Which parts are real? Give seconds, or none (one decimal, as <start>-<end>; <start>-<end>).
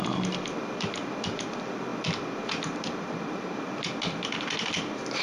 0.0-5.2